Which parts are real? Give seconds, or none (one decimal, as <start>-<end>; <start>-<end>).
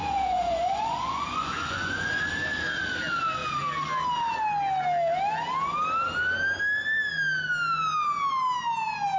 2.2-9.2